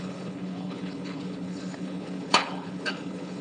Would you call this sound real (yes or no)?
no